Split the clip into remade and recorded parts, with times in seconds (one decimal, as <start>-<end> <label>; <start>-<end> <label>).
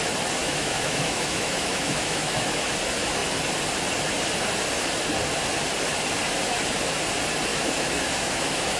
0.0-0.4 recorded; 0.4-2.6 remade; 2.6-7.5 recorded; 7.5-8.8 remade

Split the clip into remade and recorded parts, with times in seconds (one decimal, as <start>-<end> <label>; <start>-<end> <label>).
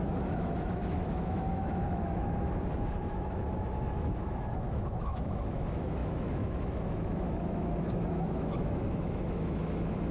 0.0-10.1 remade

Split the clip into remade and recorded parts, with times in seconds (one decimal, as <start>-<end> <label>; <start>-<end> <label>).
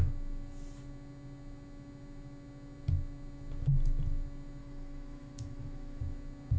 0.0-4.6 recorded; 4.6-6.0 remade; 6.0-6.6 recorded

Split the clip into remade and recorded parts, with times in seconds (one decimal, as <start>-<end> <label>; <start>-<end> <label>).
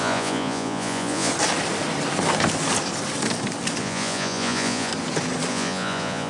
0.0-1.3 remade; 1.3-3.8 recorded; 3.8-4.9 remade; 4.9-5.5 recorded; 5.5-6.3 remade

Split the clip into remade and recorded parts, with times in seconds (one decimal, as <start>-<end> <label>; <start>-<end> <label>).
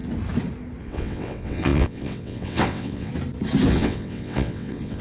0.0-0.8 recorded; 0.8-3.1 remade; 3.1-3.7 recorded; 3.7-5.0 remade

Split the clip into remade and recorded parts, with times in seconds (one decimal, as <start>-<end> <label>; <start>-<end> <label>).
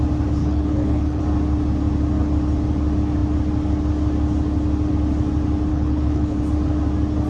0.0-0.4 recorded; 0.4-1.2 remade; 1.2-5.7 recorded; 5.7-6.4 remade; 6.4-7.3 recorded